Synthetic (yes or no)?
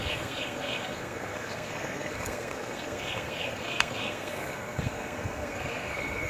yes